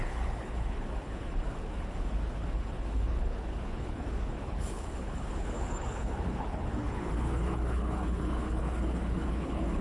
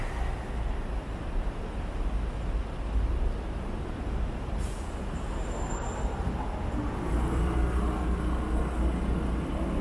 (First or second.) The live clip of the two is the second